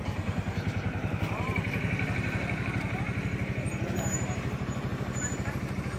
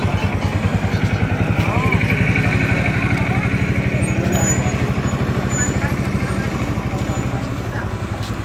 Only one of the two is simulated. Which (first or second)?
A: first